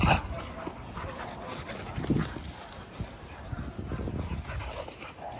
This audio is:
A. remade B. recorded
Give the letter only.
B